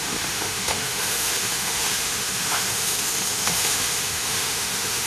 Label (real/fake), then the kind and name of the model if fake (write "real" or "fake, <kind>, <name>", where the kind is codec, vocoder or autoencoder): fake, autoencoder, DAC-VAE